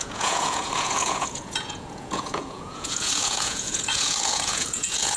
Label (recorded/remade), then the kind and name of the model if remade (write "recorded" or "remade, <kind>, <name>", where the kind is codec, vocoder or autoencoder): remade, vocoder, Vocos